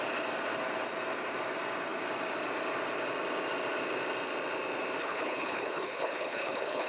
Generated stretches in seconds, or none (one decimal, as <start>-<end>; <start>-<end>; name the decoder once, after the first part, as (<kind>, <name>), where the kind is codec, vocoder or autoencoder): 5.0-6.9 (codec, HILCodec)